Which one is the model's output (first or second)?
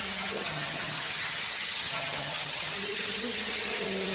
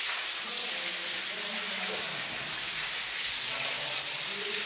first